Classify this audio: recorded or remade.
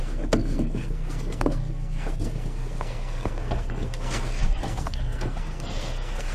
remade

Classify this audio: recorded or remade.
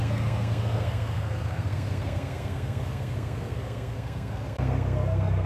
remade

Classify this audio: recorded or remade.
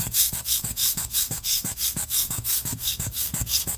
remade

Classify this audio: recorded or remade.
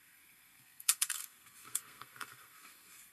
remade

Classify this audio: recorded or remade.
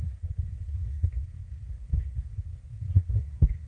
remade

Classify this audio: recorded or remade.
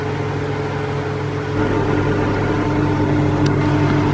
recorded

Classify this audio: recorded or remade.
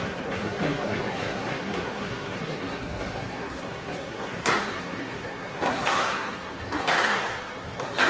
remade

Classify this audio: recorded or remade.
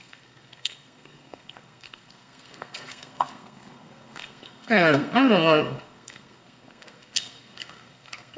remade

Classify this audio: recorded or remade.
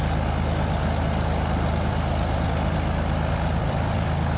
recorded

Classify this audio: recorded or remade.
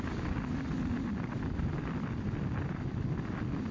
recorded